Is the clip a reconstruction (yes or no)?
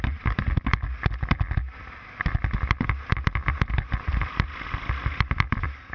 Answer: no